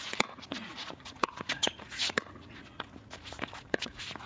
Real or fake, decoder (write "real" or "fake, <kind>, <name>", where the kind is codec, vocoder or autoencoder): fake, vocoder, Vocos